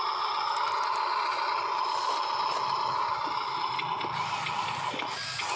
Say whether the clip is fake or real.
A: real